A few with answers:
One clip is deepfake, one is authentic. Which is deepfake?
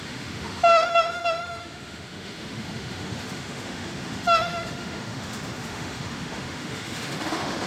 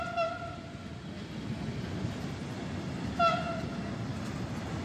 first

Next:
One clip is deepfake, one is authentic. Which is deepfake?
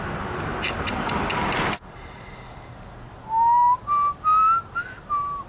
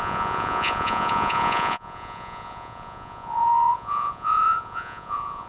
second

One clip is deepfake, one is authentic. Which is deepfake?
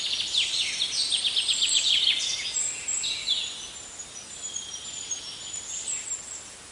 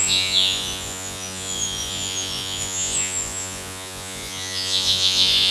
second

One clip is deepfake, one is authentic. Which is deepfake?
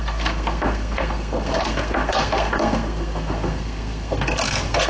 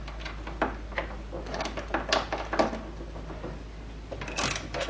first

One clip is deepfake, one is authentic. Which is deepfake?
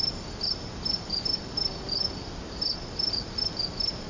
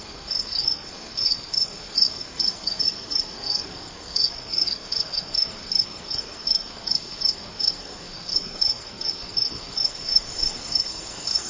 second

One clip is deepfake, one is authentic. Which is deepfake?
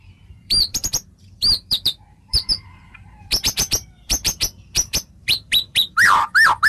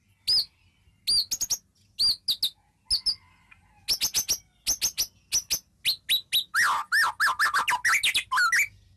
first